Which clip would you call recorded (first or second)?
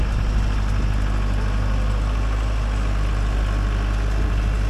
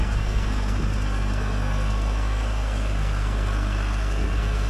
first